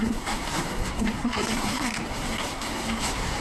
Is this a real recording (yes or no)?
no